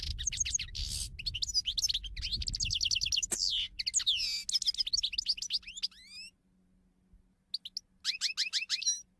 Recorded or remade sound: recorded